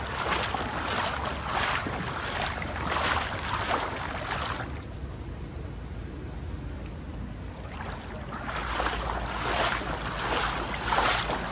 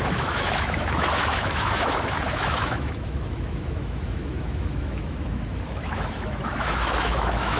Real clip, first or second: first